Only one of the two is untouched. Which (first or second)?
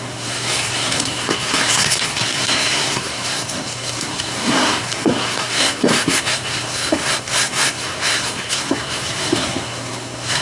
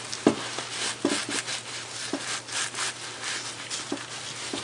second